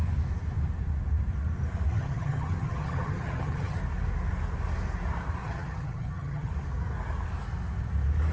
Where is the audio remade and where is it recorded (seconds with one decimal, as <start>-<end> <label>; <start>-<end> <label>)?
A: 0.0-1.9 recorded; 1.9-3.8 remade; 3.8-5.4 recorded; 5.4-6.5 remade; 6.5-8.3 recorded